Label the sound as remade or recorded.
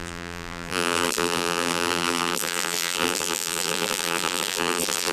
remade